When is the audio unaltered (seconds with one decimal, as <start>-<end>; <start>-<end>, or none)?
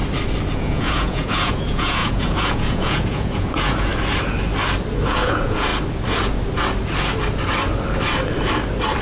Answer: 0.0-0.5; 3.9-5.1; 5.7-9.0